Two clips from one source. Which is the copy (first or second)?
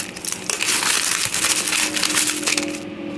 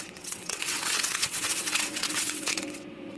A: second